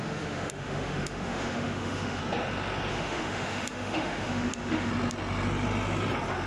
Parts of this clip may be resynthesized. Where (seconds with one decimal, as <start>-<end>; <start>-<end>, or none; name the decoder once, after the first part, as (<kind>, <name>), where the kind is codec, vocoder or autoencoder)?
0.0-2.2 (autoencoder, DAC-VAE); 2.9-4.9